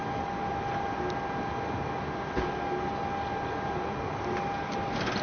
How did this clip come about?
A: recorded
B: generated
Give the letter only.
A